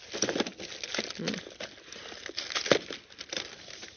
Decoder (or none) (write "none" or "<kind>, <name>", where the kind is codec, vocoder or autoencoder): none